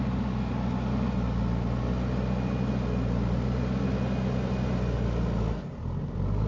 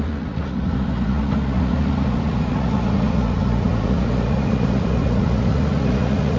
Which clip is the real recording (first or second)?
first